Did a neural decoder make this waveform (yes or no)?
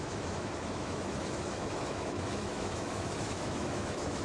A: yes